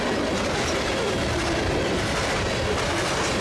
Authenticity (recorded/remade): recorded